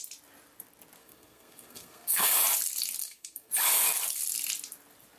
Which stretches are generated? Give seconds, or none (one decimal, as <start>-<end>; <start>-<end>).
1.0-2.4; 3.0-3.5